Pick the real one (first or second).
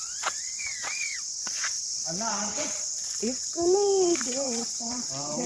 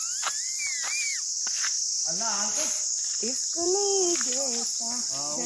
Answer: second